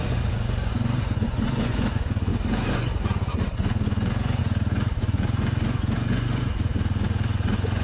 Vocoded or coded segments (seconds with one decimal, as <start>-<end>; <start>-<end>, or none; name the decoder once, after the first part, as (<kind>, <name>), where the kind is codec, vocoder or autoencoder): 0.0-7.8 (vocoder, Vocos)